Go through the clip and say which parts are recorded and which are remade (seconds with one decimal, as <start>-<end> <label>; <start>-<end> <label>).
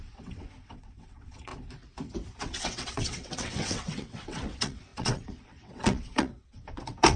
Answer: 0.0-1.5 remade; 1.5-2.4 recorded; 2.4-7.2 remade